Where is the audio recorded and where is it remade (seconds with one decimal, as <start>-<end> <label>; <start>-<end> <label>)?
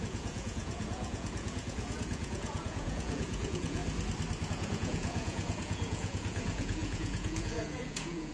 0.0-3.8 remade; 3.8-4.5 recorded; 4.5-8.3 remade